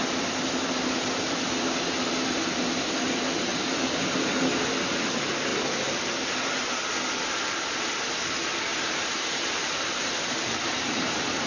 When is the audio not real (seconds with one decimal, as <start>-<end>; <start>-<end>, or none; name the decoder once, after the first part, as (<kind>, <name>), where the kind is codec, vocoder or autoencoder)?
3.5-4.0 (vocoder, BigVGAN v2); 8.7-11.5